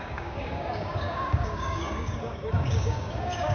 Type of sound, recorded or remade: remade